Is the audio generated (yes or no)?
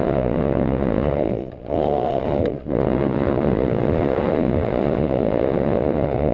yes